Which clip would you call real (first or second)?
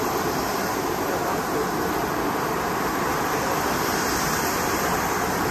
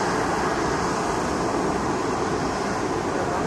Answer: second